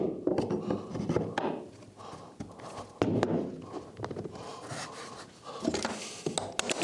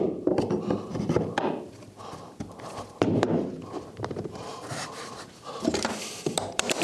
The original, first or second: first